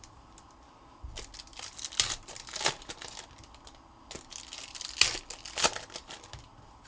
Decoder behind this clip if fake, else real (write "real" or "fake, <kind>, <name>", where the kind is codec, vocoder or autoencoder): real